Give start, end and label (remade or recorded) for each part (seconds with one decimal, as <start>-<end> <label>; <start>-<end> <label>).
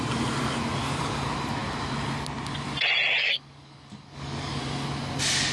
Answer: 0.0-3.2 recorded; 3.2-4.6 remade; 4.6-5.5 recorded